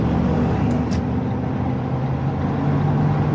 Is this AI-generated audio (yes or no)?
no